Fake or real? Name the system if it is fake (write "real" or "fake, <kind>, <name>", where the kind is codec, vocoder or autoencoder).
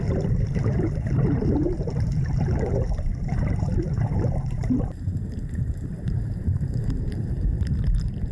fake, vocoder, BigVGAN v2